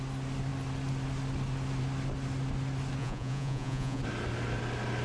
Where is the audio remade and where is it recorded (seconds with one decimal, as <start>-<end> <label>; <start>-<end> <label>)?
0.0-3.0 recorded; 3.0-4.0 remade; 4.0-5.0 recorded